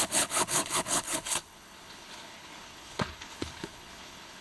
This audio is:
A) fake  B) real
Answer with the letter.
A